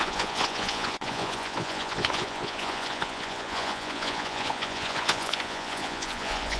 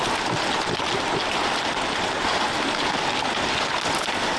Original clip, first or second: second